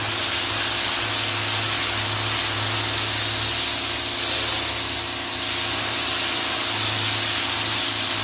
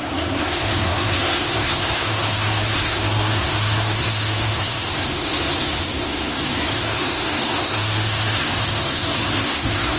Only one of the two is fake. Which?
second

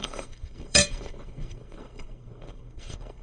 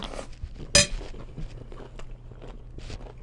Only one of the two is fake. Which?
first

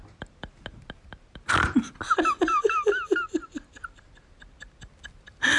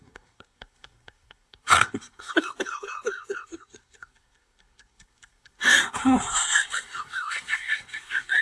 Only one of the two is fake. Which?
second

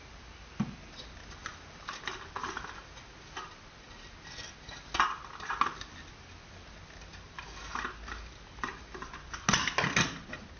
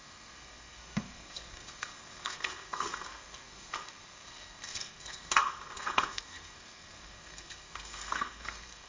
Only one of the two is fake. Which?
second